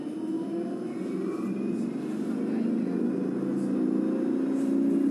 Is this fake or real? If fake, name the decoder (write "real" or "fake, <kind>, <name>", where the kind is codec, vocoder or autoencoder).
real